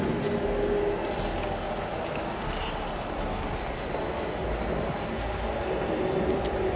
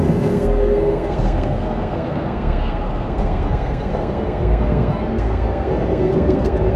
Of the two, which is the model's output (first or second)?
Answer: second